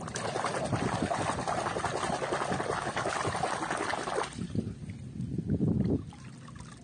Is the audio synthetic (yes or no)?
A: no